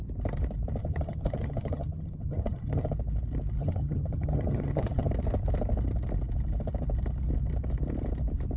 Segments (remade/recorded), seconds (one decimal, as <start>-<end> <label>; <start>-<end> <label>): 0.0-0.8 recorded; 0.8-2.9 remade; 2.9-3.6 recorded; 3.6-5.1 remade; 5.1-8.6 recorded